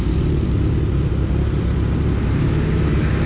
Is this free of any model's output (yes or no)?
yes